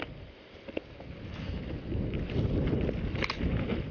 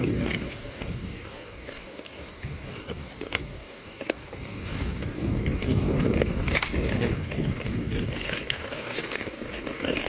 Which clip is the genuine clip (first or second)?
first